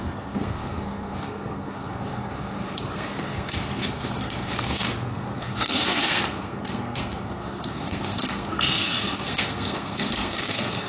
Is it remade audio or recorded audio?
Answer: remade